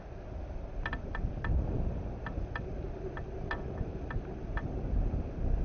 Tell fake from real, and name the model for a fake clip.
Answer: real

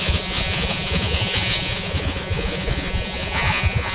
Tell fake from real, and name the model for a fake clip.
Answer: fake, vocoder, Vocos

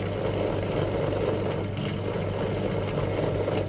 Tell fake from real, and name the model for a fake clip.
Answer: real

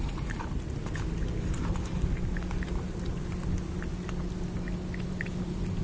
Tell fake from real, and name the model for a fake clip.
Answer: real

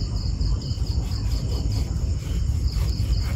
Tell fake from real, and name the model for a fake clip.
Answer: fake, vocoder, BigVGAN v2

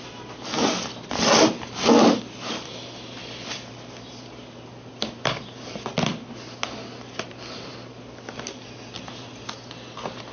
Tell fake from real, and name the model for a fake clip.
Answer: real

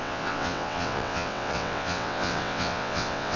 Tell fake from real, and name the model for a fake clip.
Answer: fake, vocoder, WaveNeXt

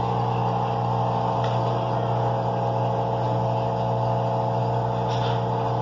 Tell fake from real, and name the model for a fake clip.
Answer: real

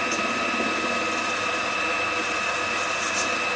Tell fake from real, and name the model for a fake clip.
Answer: real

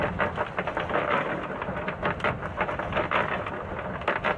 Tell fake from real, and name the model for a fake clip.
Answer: real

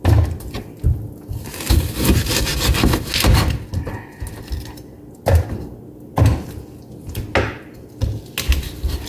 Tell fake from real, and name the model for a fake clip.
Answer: real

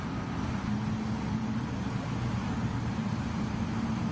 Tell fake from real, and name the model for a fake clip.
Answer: real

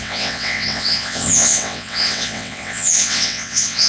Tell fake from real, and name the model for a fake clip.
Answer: fake, vocoder, WaveNeXt